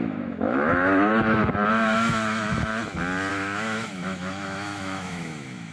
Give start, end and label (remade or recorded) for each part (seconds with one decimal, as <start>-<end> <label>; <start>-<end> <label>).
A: 0.0-1.1 remade; 1.1-1.7 recorded; 1.7-2.7 remade; 2.7-3.3 recorded; 3.3-5.7 remade